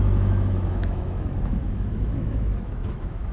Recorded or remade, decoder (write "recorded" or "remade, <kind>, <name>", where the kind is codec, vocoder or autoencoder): remade, autoencoder, DAC-VAE